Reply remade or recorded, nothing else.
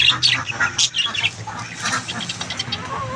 recorded